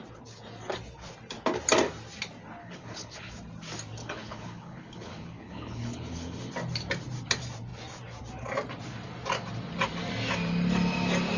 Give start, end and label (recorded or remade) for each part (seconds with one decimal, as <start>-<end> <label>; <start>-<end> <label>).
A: 0.0-2.6 recorded; 2.6-3.3 remade; 3.3-4.0 recorded; 4.0-6.5 remade; 6.5-11.4 recorded